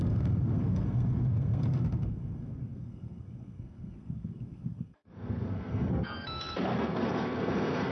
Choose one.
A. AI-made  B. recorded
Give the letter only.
A